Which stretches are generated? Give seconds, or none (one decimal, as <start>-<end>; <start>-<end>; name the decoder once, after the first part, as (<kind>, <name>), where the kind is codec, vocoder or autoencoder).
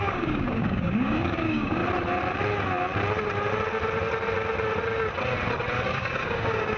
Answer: 0.0-1.8 (codec, DAC); 5.9-6.8